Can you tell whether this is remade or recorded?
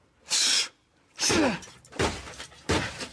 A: recorded